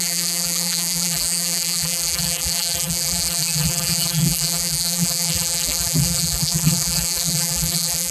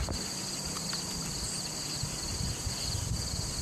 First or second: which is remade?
first